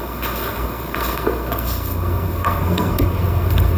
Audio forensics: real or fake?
fake